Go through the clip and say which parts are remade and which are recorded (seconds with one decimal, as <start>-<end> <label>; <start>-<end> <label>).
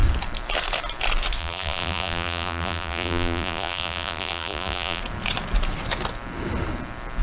0.0-1.4 recorded; 1.4-5.0 remade; 5.0-7.2 recorded